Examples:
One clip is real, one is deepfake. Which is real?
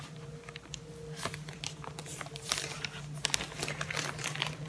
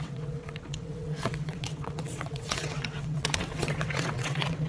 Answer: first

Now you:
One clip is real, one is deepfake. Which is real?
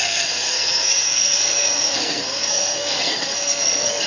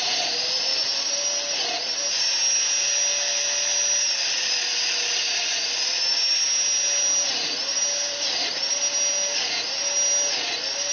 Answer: second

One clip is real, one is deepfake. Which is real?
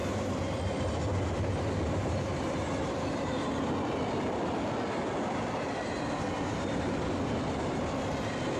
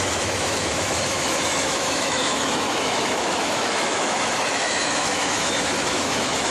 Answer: first